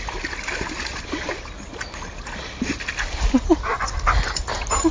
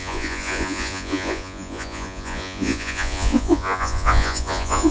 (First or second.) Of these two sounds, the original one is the first